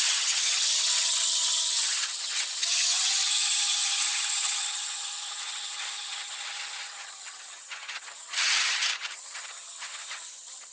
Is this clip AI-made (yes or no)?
yes